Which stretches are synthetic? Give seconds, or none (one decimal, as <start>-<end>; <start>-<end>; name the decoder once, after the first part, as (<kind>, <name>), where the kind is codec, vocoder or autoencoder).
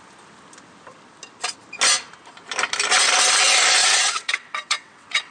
3.8-5.3 (vocoder, WaveNeXt)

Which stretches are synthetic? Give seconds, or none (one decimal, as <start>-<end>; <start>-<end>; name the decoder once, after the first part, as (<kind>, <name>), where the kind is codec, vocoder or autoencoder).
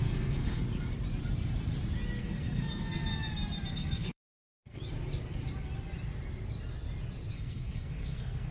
0.0-0.6 (codec, SNAC); 2.2-3.1; 3.7-4.8; 7.3-8.5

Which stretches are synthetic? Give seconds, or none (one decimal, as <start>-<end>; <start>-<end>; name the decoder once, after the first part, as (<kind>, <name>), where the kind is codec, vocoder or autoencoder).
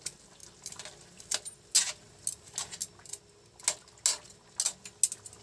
none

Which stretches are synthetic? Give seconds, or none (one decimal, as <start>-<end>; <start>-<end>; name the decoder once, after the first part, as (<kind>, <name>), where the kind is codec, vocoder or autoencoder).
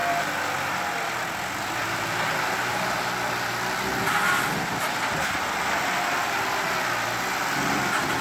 0.0-1.2 (vocoder, BigVGAN v2); 1.8-4.0